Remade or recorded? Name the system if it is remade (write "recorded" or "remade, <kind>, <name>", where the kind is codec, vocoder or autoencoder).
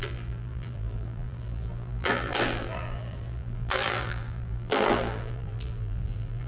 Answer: remade, vocoder, BigVGAN v2